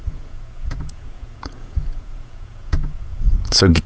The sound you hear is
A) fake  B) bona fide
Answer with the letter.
A